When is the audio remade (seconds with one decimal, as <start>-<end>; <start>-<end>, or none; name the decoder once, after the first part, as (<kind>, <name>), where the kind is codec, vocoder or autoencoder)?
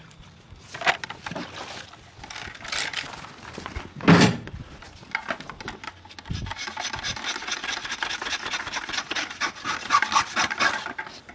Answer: none